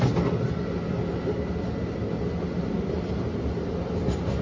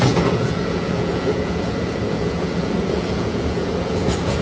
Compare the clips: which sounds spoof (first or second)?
second